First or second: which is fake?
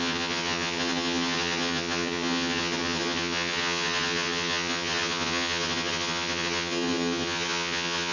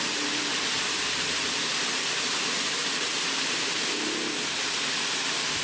first